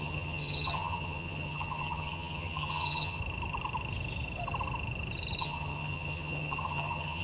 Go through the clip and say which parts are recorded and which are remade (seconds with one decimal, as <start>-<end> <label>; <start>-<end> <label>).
0.0-3.2 remade; 3.2-5.4 recorded; 5.4-7.2 remade